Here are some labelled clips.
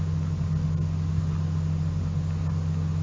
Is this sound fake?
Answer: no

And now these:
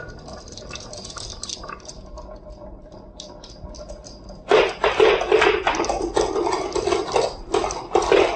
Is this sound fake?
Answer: no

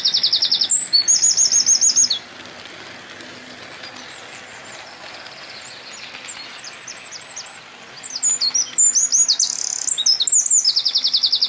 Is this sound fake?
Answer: no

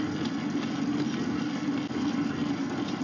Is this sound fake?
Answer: no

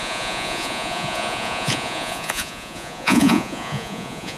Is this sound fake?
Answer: yes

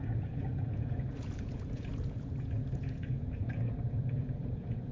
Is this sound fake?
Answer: yes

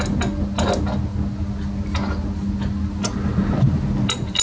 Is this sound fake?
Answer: no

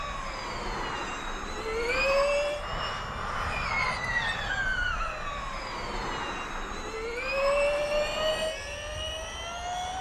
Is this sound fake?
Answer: no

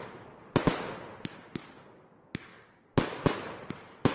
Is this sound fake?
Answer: no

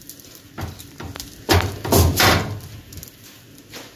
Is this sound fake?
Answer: no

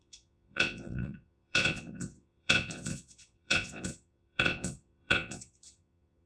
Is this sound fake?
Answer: yes